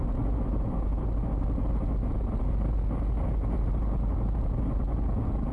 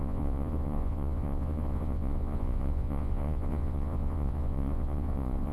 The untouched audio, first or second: first